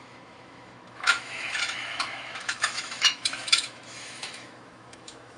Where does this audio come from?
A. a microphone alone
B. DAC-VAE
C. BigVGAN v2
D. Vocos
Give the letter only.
B